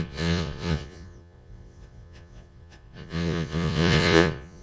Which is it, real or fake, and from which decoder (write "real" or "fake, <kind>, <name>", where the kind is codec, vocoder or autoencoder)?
fake, vocoder, Vocos